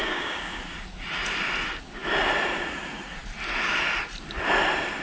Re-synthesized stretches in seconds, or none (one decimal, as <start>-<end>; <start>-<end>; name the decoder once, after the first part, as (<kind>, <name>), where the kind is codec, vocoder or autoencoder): 0.0-0.6 (codec, DAC)